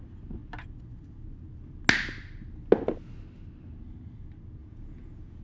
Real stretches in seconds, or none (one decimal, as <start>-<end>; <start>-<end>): 0.0-4.6